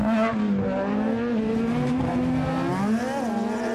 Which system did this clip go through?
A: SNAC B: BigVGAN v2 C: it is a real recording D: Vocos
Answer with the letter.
C